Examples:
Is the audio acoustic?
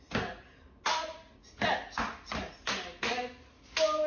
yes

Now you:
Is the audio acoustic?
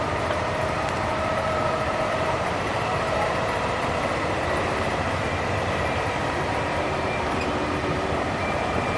no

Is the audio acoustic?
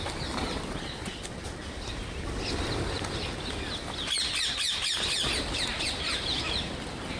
yes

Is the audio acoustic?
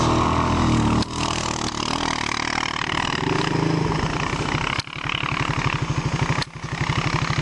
yes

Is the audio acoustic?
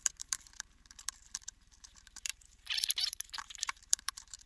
no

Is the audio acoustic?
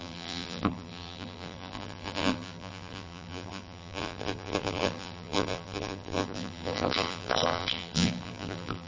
no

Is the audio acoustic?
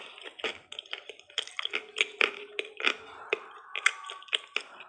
yes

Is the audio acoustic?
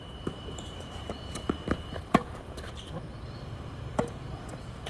no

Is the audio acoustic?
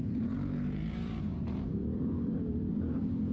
no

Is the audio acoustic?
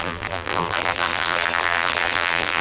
no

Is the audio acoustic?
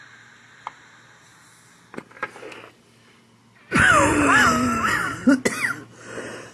yes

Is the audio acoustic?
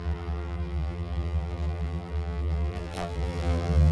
no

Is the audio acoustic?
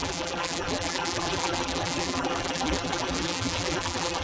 no